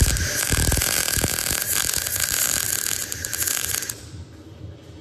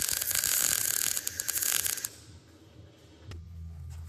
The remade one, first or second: first